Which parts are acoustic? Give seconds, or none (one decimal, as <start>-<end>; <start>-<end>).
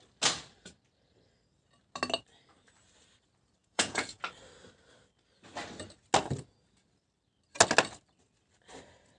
0.0-3.6; 4.2-9.2